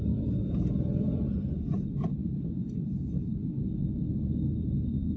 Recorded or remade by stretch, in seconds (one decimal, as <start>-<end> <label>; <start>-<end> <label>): 0.0-5.2 recorded